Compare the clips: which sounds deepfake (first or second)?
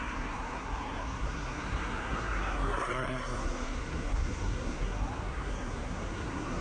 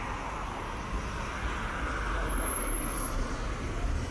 first